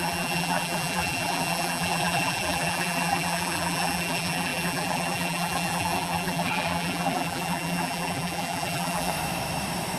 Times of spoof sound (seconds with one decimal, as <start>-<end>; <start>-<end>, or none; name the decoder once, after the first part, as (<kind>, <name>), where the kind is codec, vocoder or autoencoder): 0.0-9.1 (vocoder, BigVGAN v2)